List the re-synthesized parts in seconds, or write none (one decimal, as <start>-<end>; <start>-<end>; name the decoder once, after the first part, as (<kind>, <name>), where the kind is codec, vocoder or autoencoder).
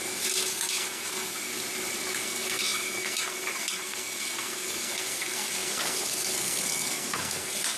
0.0-1.5 (codec, SNAC); 2.1-7.8